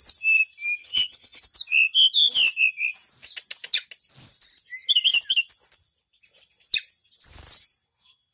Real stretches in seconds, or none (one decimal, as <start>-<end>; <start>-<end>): 0.0-0.8; 1.4-8.3